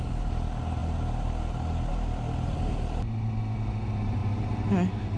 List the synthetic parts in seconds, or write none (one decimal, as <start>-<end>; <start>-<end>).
none